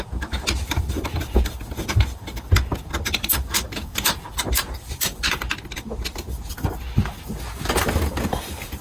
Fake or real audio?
real